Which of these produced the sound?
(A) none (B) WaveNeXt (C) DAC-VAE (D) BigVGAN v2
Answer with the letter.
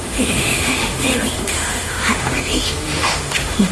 C